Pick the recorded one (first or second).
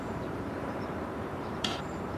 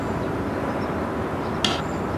second